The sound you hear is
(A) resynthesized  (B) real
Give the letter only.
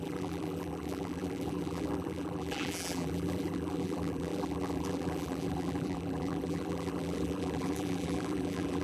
A